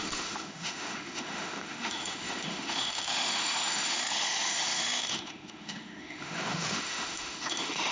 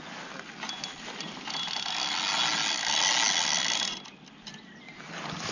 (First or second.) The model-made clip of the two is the first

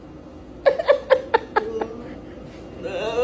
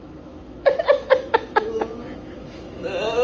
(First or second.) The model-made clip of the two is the second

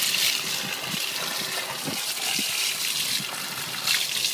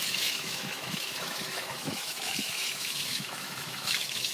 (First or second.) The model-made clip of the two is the second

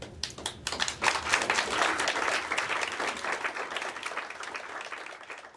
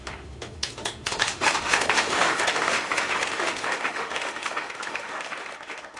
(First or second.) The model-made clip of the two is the second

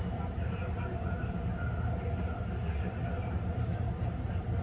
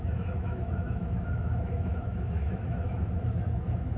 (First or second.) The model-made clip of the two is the second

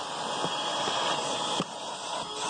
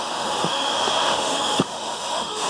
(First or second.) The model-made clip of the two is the second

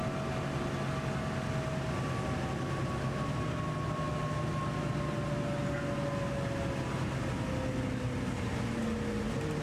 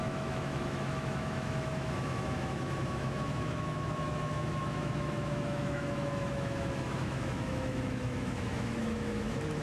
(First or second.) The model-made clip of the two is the second